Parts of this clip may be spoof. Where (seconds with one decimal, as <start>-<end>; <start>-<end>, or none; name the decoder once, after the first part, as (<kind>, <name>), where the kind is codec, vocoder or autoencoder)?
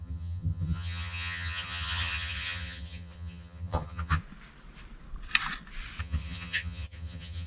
0.0-4.2 (vocoder, HiFi-GAN); 6.0-7.5